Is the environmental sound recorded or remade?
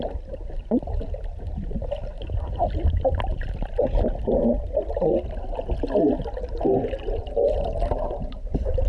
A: recorded